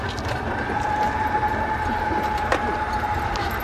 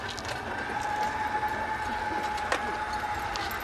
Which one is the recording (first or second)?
second